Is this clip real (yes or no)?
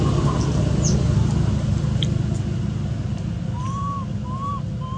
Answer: yes